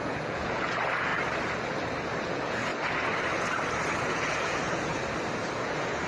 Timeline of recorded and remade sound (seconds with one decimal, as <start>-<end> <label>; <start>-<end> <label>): 0.0-1.1 remade; 1.1-2.2 recorded; 2.2-2.7 remade; 2.7-4.0 recorded; 4.0-5.0 remade; 5.0-5.5 recorded; 5.5-6.1 remade

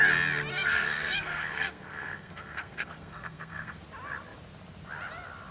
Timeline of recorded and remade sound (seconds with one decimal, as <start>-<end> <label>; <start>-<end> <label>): 0.0-0.5 recorded; 0.5-3.8 remade; 3.8-5.5 recorded

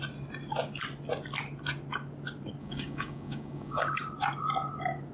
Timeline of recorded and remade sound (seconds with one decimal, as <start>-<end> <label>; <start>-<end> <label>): 0.0-2.6 recorded; 2.6-3.8 remade; 3.8-5.1 recorded

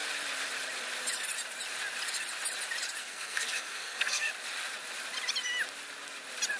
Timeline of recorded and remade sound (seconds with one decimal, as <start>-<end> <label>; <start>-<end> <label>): 0.0-3.0 recorded; 3.0-4.3 remade; 4.3-6.6 recorded